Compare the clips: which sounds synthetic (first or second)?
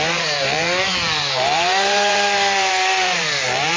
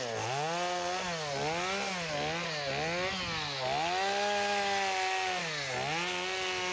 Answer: first